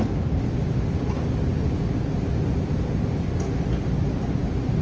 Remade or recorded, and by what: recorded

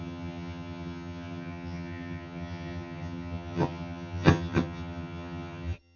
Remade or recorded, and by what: remade, vocoder, HiFi-GAN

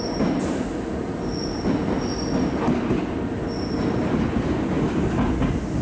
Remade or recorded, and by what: recorded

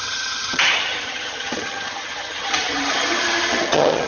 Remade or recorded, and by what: remade, vocoder, HiFi-GAN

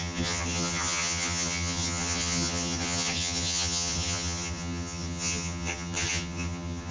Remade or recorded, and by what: remade, vocoder, HiFi-GAN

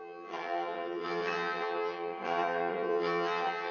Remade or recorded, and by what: remade, vocoder, HiFi-GAN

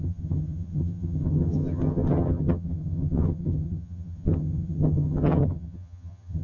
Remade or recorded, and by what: remade, vocoder, HiFi-GAN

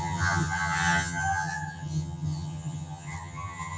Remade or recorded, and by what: remade, vocoder, HiFi-GAN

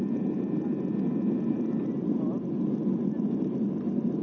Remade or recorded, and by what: recorded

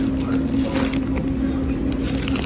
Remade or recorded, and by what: recorded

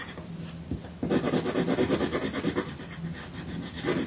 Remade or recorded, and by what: recorded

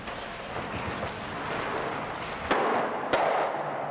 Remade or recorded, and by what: recorded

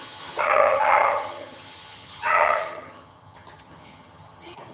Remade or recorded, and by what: remade, vocoder, HiFi-GAN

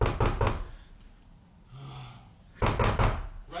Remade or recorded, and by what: recorded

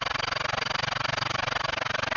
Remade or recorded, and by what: recorded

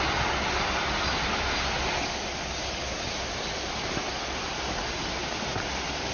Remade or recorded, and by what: recorded